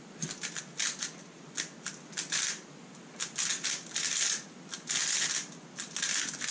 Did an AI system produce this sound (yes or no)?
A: no